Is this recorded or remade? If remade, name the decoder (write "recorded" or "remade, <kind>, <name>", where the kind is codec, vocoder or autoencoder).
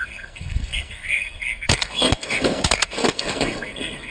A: remade, codec, SNAC